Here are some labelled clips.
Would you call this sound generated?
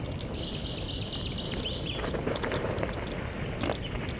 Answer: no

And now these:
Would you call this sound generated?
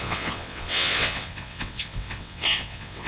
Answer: yes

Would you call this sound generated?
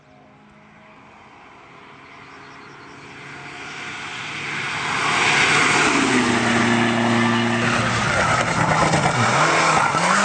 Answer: no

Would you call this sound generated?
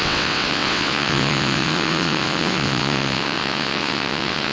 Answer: yes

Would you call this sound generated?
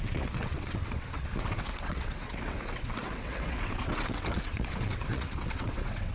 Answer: yes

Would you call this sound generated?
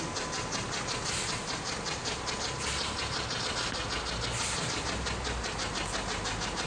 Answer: no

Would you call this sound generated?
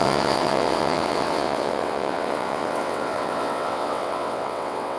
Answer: yes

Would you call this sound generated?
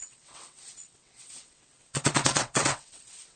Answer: yes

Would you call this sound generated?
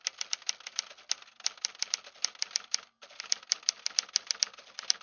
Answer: no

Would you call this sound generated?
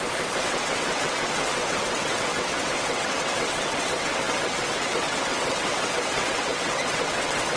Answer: yes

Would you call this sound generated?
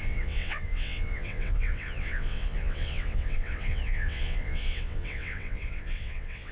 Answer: yes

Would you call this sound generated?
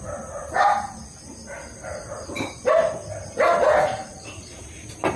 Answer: no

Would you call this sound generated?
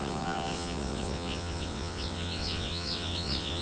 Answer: yes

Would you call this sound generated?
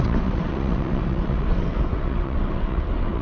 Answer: yes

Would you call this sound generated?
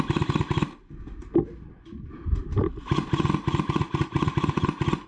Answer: no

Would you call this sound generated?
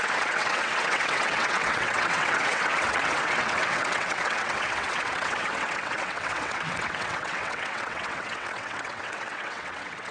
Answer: yes